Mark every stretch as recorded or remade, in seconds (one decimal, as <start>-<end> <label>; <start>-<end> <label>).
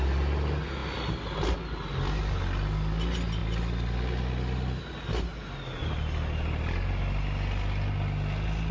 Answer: 0.0-8.7 recorded